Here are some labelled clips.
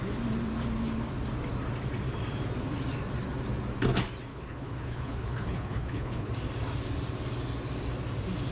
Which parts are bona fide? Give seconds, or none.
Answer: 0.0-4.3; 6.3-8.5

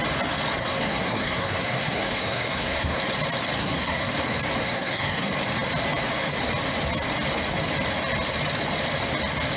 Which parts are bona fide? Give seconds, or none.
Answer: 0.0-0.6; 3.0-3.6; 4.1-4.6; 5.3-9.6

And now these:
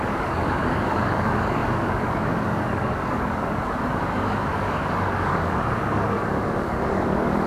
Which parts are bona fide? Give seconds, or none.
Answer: none